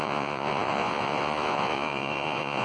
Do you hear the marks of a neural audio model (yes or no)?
yes